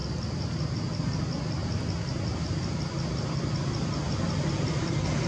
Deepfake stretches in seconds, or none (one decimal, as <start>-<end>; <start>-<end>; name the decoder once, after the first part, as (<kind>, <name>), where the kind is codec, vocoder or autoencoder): none